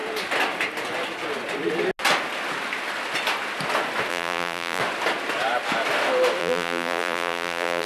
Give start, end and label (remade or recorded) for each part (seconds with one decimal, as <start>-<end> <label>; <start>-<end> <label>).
0.0-4.1 recorded; 4.1-4.8 remade; 4.8-6.4 recorded; 6.4-7.9 remade